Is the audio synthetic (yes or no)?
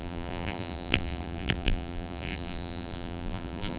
yes